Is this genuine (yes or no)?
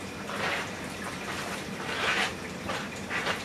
no